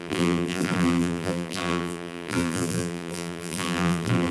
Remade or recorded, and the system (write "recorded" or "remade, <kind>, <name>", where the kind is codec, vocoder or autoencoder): remade, vocoder, BigVGAN v2